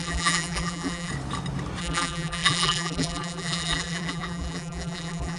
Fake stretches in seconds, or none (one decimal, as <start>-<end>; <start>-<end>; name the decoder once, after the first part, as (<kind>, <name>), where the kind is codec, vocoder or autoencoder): 0.0-1.1 (vocoder, BigVGAN v2); 1.8-5.4